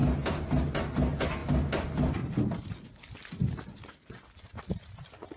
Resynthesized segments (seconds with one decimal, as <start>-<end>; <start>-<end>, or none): 1.4-4.6